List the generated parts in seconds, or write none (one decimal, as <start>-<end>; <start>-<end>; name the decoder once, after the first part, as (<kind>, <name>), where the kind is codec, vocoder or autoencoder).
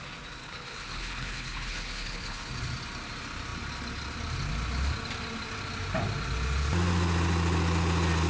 0.4-2.5 (codec, HILCodec)